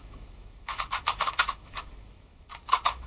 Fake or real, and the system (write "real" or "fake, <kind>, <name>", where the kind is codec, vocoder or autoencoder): fake, autoencoder, DAC-VAE